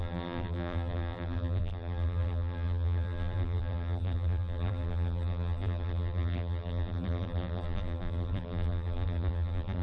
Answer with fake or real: fake